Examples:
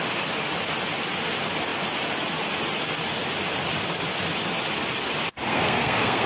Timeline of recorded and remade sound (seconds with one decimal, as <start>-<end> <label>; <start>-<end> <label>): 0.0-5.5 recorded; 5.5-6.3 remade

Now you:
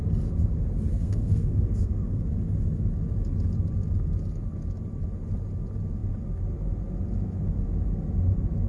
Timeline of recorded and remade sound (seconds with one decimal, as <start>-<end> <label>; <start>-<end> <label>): 0.0-0.9 recorded; 0.9-2.2 remade; 2.2-8.7 recorded

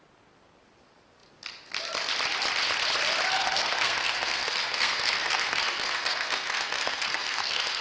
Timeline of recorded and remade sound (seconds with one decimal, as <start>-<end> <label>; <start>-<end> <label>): 0.0-3.3 recorded; 3.3-7.8 remade

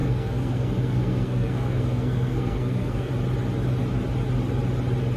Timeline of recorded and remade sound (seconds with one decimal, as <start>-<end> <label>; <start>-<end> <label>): 0.0-3.1 remade; 3.1-5.2 recorded